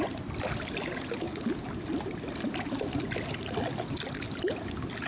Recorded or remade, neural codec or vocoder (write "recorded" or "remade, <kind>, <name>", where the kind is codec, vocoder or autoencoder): recorded